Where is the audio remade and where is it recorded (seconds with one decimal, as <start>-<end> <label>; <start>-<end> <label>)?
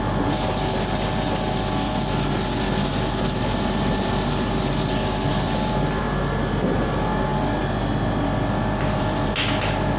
0.0-10.0 recorded